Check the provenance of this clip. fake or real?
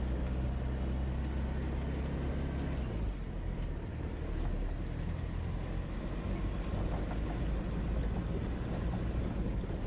real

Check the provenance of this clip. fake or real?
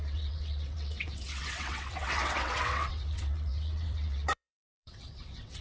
fake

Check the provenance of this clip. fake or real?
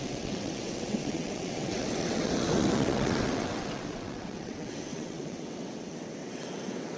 fake